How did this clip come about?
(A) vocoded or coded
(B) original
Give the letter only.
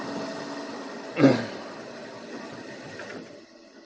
B